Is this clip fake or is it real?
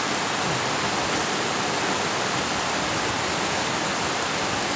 real